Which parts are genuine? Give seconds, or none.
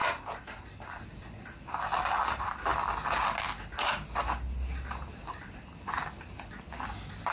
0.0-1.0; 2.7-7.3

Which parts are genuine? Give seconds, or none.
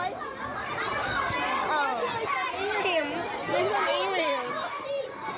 0.0-0.5; 1.2-5.4